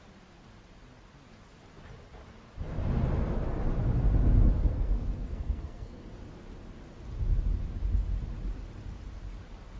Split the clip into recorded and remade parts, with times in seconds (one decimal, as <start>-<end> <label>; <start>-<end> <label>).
0.0-4.7 recorded; 4.7-6.1 remade; 6.1-9.8 recorded

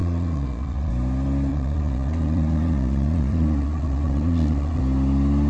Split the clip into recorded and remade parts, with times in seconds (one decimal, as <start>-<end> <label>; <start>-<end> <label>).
0.0-0.9 remade; 0.9-1.5 recorded; 1.5-4.8 remade; 4.8-5.5 recorded

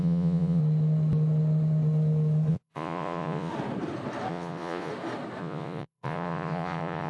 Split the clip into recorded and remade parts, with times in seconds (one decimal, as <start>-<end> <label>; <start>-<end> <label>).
0.0-0.6 remade; 0.6-2.5 recorded; 2.5-3.5 remade; 3.5-4.3 recorded; 4.3-4.9 remade; 4.9-5.4 recorded; 5.4-7.1 remade

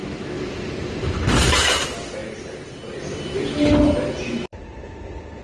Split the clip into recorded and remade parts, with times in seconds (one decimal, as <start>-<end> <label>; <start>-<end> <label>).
0.0-5.4 recorded